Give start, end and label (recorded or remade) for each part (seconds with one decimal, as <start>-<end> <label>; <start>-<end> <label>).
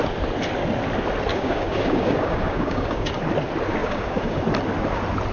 0.0-1.3 recorded; 1.3-3.1 remade; 3.1-3.8 recorded; 3.8-4.4 remade; 4.4-5.3 recorded